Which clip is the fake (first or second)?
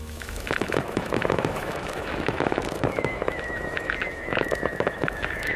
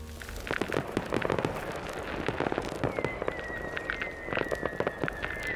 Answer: first